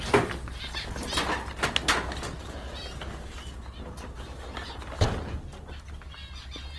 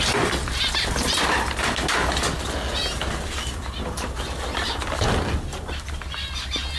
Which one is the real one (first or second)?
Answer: first